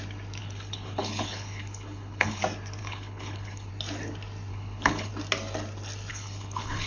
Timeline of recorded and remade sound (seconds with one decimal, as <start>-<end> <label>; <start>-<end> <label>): 0.0-0.4 recorded; 0.4-2.4 remade; 2.4-2.8 recorded; 2.8-3.7 remade; 3.7-4.5 recorded; 4.5-5.1 remade; 5.1-6.1 recorded; 6.1-6.9 remade